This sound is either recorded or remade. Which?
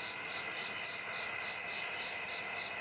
recorded